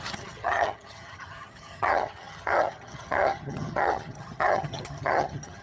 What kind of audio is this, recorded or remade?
remade